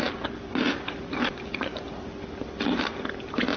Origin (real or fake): real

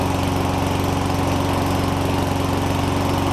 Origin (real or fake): real